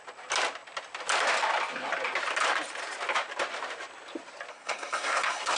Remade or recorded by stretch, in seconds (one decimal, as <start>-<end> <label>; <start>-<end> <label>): 0.0-4.5 recorded; 4.5-5.6 remade